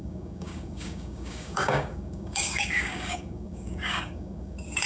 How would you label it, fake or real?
fake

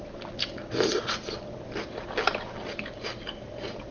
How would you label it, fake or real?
real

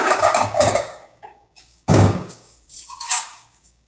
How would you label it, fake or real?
fake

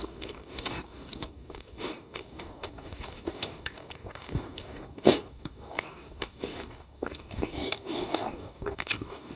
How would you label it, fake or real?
fake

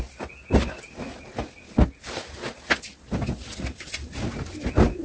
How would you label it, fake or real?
real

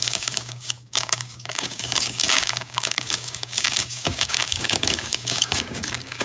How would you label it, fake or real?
fake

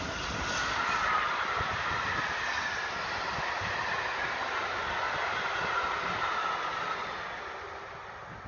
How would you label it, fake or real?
real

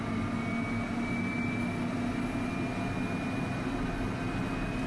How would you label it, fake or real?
real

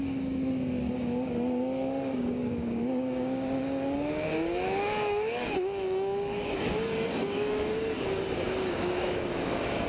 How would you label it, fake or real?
fake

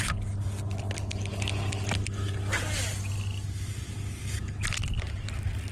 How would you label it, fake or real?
real